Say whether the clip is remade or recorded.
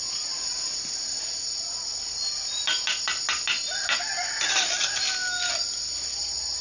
recorded